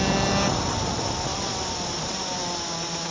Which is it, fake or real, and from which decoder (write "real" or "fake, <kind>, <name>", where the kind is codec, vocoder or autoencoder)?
real